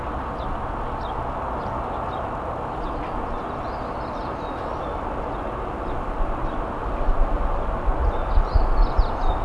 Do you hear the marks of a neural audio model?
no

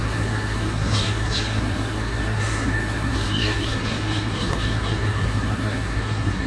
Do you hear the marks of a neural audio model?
yes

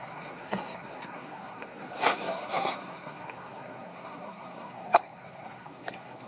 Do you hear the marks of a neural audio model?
yes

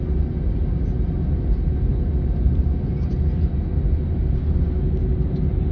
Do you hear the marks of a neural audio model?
no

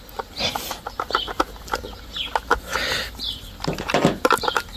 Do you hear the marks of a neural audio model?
no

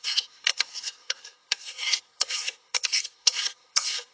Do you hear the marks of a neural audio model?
yes